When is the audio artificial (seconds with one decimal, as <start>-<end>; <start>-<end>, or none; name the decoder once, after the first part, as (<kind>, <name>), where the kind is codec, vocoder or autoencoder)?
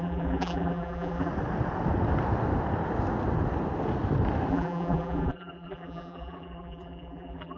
0.0-1.3 (vocoder, BigVGAN v2); 4.5-7.6